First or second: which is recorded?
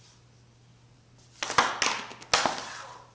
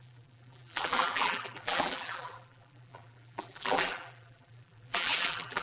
first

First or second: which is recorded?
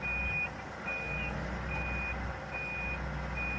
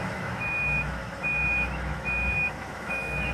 first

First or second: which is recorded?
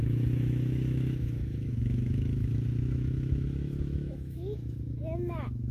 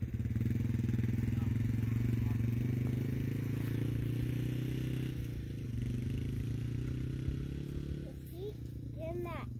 second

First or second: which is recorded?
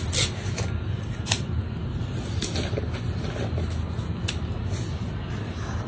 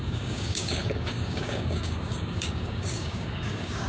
first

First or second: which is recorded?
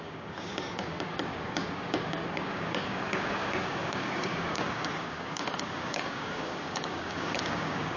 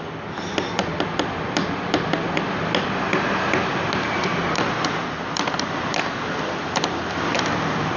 second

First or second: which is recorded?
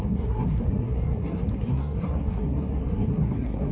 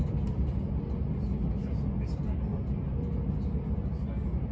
second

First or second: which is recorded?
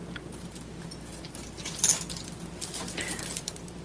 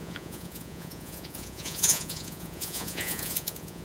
first